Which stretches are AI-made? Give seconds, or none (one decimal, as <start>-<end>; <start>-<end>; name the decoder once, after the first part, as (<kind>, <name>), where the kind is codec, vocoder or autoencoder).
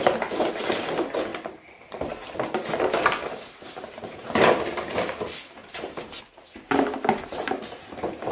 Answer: none